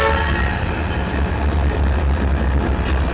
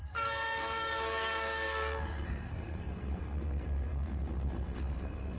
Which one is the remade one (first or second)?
second